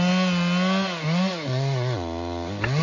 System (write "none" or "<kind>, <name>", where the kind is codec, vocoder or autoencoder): none